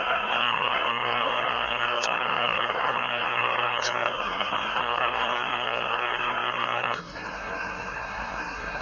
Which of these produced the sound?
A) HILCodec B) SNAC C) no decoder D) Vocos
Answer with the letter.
B